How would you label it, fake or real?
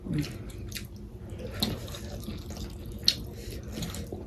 real